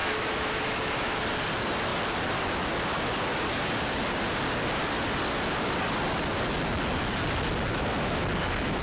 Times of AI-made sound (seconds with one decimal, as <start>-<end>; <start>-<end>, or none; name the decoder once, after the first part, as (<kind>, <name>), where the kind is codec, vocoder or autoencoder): 0.0-1.2 (autoencoder, DAC-VAE); 7.7-8.8